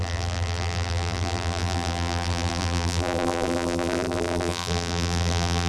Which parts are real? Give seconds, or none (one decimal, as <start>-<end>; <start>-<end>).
none